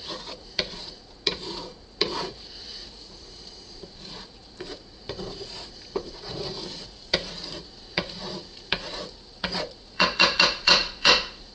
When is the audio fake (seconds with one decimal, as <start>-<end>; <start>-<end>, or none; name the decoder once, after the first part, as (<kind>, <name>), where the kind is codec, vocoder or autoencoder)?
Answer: 0.0-11.5 (vocoder, Vocos)